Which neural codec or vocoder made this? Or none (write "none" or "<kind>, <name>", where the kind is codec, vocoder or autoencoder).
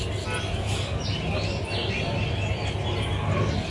none